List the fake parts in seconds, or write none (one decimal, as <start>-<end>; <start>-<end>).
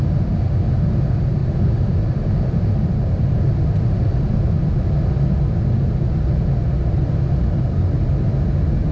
1.4-4.7